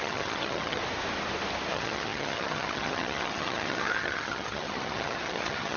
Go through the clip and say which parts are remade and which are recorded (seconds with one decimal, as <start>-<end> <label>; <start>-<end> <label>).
0.0-0.8 remade; 0.8-1.7 recorded; 1.7-5.8 remade